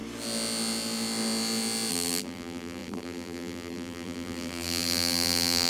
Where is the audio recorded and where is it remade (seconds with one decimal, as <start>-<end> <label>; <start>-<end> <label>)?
0.0-1.9 recorded; 1.9-5.7 remade